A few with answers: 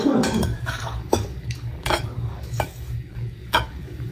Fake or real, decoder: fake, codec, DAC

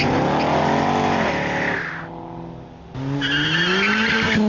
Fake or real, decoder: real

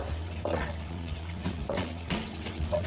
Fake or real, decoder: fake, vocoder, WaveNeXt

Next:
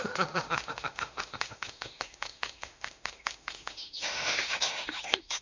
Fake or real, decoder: fake, autoencoder, DAC-VAE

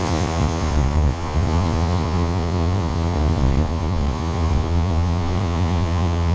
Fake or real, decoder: fake, vocoder, Vocos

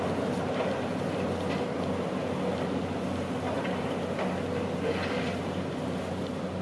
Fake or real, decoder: real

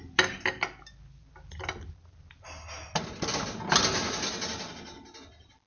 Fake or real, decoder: real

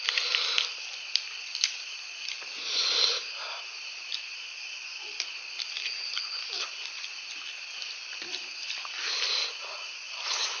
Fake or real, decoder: real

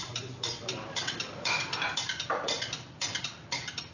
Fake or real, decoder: real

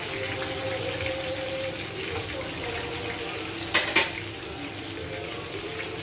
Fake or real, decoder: real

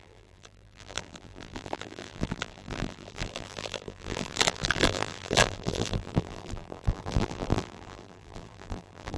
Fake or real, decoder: fake, vocoder, BigVGAN v2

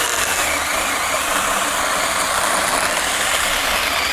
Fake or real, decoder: real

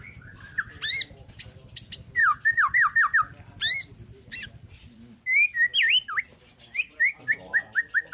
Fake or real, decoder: real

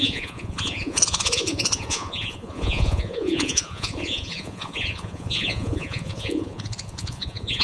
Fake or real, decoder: fake, vocoder, Vocos